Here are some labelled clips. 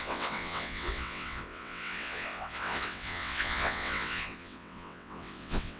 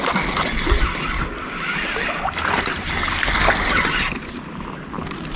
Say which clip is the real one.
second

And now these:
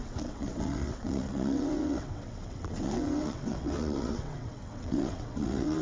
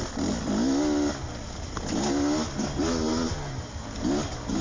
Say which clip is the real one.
second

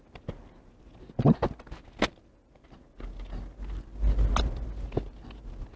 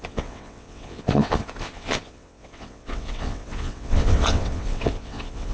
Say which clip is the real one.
first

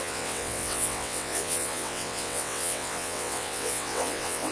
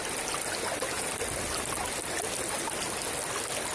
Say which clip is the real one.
second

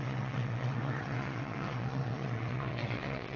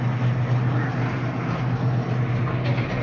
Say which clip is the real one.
second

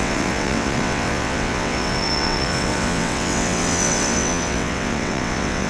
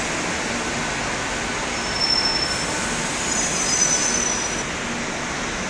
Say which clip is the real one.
second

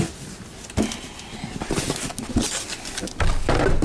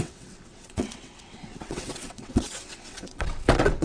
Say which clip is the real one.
first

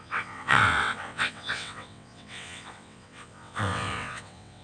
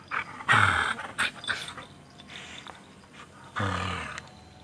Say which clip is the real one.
second